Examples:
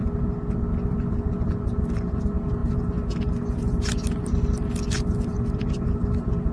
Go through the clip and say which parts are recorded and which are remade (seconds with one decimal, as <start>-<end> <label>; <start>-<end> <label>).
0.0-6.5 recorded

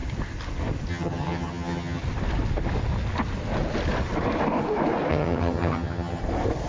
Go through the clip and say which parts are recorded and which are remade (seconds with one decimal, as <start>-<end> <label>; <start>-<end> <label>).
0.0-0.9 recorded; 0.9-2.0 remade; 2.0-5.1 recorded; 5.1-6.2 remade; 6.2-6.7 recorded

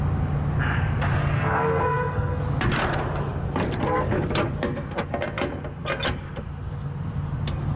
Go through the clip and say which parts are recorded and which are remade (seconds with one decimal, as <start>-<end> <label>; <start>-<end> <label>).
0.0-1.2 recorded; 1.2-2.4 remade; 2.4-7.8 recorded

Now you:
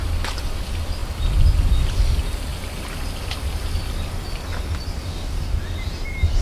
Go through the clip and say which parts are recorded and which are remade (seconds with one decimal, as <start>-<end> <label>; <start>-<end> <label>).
0.0-5.0 recorded; 5.0-5.6 remade; 5.6-6.4 recorded

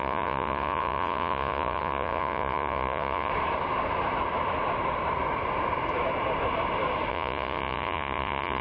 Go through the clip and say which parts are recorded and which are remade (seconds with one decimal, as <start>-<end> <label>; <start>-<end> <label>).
0.0-3.3 remade; 3.3-7.1 recorded; 7.1-8.6 remade

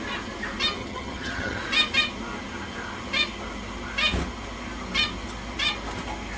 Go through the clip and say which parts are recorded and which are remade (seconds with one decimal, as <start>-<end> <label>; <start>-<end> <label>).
0.0-0.8 recorded; 0.8-1.6 remade; 1.6-6.4 recorded

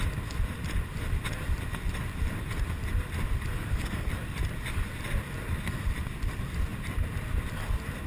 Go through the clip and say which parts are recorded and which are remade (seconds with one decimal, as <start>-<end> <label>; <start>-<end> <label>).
0.0-3.5 recorded; 3.5-4.1 remade; 4.1-8.1 recorded